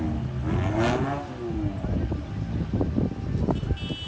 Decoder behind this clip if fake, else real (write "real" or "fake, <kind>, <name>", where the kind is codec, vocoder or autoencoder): real